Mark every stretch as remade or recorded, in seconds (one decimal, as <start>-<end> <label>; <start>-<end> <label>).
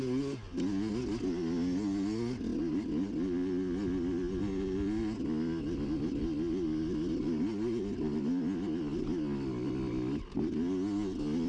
0.0-11.5 recorded